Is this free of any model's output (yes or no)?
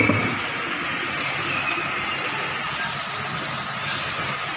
yes